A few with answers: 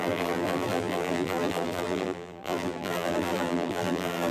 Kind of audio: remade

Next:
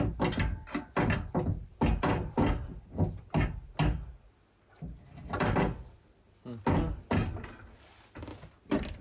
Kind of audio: recorded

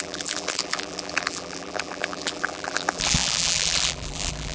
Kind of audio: remade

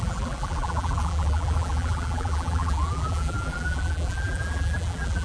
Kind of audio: remade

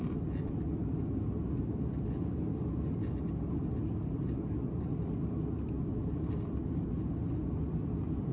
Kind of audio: recorded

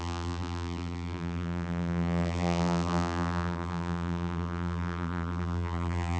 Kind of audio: remade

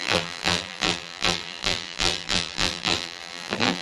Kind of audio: remade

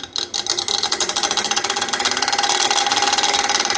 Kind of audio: recorded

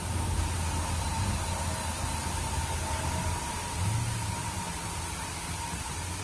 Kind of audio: recorded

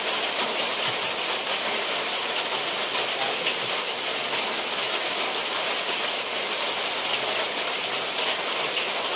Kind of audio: recorded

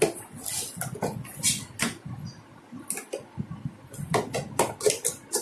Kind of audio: recorded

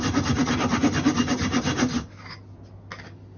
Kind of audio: recorded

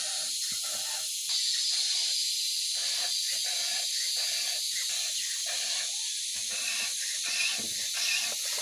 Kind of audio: recorded